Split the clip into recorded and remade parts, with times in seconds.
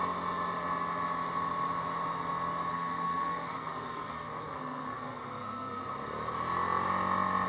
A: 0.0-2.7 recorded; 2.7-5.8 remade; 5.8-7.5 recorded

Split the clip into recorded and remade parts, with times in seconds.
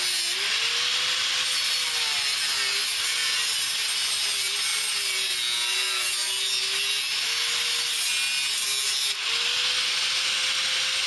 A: 0.0-4.7 recorded; 4.7-5.3 remade; 5.3-11.1 recorded